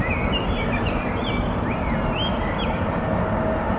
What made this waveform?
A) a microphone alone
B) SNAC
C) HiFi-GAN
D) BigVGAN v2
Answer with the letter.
A